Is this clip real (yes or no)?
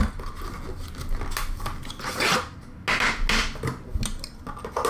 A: yes